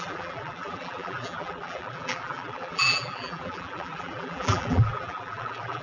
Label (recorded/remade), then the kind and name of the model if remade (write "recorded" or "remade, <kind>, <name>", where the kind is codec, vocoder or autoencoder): remade, vocoder, BigVGAN v2